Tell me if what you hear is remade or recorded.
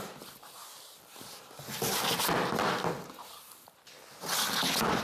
recorded